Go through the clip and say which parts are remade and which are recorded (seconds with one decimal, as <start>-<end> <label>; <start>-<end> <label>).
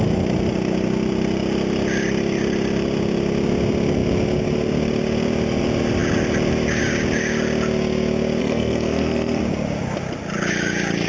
0.0-8.4 recorded; 8.4-9.4 remade; 9.4-11.1 recorded